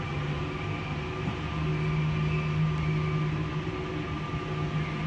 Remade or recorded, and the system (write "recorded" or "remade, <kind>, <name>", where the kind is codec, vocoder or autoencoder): recorded